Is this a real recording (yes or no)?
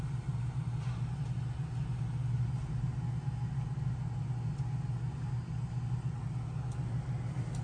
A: yes